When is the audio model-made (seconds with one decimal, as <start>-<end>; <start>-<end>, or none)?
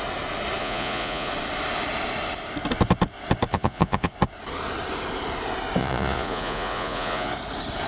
0.6-1.3; 3.5-4.1; 5.8-7.3